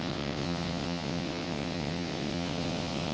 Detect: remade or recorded remade